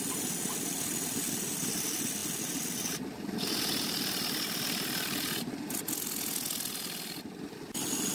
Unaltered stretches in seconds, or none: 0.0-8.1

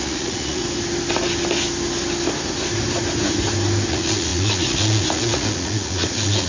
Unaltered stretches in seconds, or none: 0.6-3.9

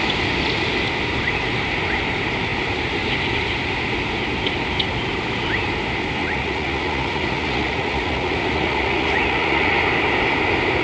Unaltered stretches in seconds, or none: 0.0-6.2; 9.8-10.8

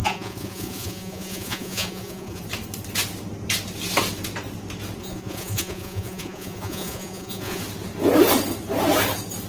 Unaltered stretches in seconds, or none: 2.4-5.0; 7.6-9.5

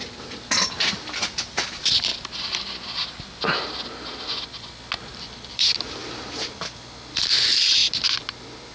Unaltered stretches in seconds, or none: 0.0-8.7